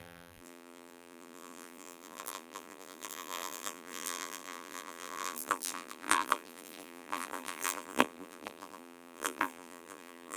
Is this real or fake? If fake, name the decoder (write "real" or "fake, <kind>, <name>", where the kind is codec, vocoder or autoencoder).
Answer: fake, vocoder, BigVGAN v2